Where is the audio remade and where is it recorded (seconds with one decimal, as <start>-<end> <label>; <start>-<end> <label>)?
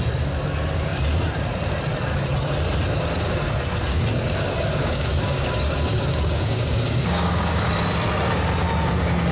0.0-4.1 recorded; 4.1-7.7 remade; 7.7-9.3 recorded